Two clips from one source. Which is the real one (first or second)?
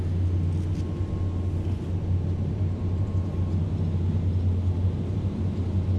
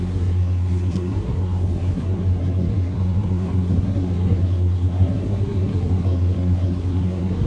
first